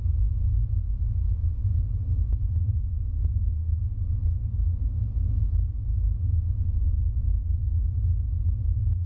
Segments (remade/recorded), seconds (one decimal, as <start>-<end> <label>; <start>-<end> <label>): 0.0-9.1 recorded